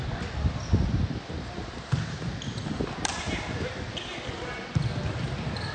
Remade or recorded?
recorded